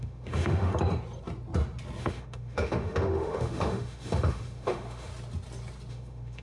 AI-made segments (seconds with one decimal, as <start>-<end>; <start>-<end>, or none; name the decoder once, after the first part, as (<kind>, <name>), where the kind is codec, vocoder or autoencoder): 0.0-0.7 (autoencoder, DAC-VAE); 2.0-5.1; 5.9-6.4